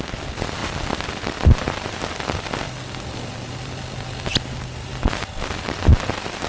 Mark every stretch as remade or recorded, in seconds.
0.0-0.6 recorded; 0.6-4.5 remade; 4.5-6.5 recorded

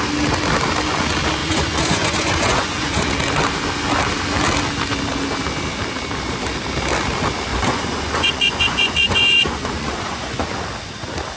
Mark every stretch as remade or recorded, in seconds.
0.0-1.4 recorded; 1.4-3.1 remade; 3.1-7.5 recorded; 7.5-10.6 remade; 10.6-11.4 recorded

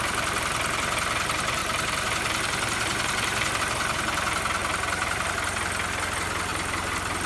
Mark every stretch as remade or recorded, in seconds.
0.0-1.6 recorded; 1.6-3.6 remade; 3.6-4.6 recorded; 4.6-5.3 remade; 5.3-6.5 recorded; 6.5-7.3 remade

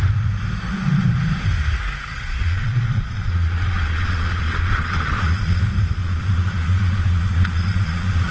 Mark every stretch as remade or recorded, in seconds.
0.0-2.1 recorded; 2.1-5.6 remade; 5.6-6.0 recorded; 6.0-8.3 remade

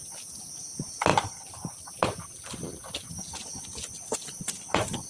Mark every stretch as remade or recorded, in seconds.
0.0-1.1 recorded; 1.1-3.1 remade; 3.1-5.1 recorded